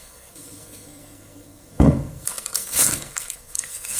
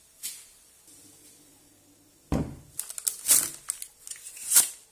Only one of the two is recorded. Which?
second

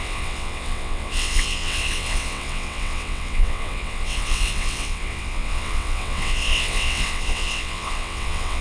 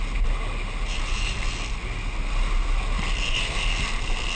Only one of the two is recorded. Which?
second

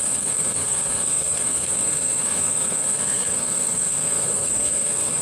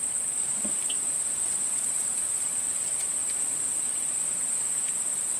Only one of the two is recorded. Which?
second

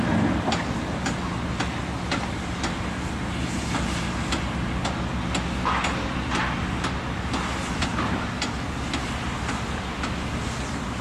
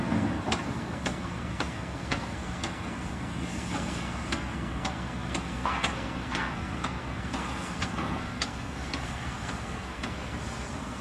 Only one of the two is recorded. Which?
first